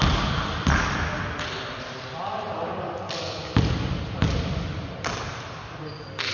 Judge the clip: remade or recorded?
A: recorded